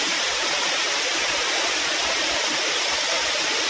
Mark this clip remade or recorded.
recorded